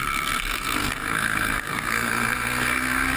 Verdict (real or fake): fake